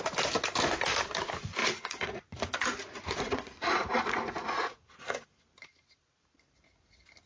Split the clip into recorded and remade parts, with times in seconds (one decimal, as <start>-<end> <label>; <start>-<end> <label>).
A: 0.0-1.6 recorded; 1.6-5.4 remade; 5.4-7.3 recorded